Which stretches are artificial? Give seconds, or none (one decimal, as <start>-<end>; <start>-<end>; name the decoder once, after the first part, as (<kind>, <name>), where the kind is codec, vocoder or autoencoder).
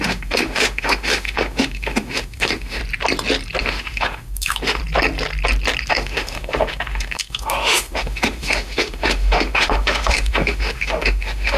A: 0.0-2.8 (autoencoder, DAC-VAE); 3.6-4.8; 5.9-11.6